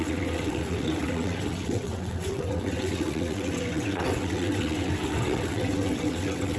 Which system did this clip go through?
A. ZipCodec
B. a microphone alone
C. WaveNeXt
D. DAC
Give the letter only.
C